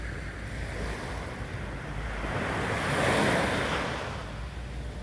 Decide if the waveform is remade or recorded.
recorded